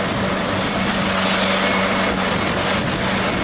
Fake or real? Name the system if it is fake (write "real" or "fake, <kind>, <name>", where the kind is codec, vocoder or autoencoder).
real